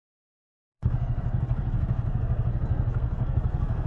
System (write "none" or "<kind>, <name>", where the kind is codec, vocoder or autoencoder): codec, SNAC